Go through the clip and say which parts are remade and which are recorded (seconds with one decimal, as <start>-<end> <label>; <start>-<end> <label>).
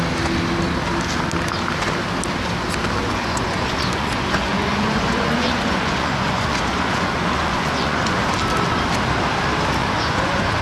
0.0-3.0 recorded; 3.0-8.2 remade; 8.2-9.8 recorded; 9.8-10.6 remade